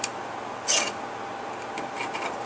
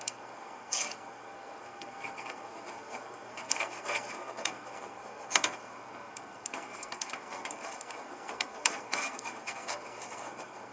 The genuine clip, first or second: first